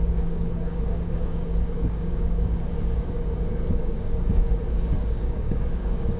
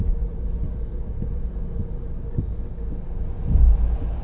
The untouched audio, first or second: second